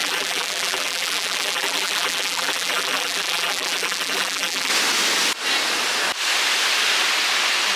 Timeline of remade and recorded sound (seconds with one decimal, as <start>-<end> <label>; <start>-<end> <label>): 0.0-4.7 remade; 4.7-7.8 recorded